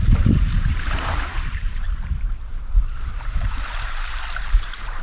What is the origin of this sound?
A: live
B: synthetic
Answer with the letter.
B